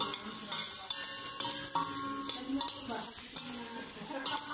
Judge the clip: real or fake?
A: real